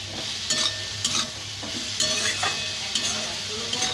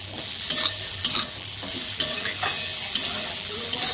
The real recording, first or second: first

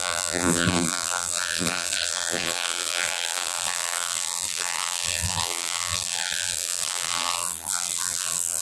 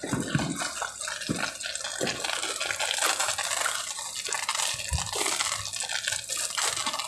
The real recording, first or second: second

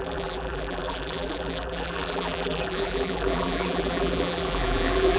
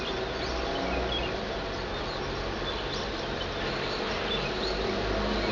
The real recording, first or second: second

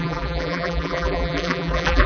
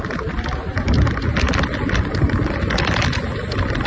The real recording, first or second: second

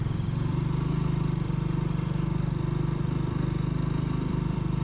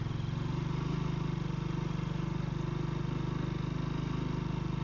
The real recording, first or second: second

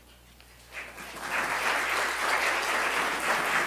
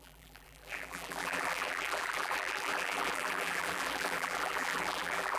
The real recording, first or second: first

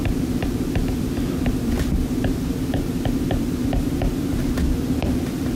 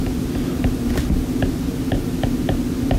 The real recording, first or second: second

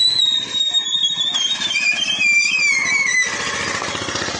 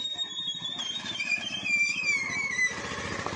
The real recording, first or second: first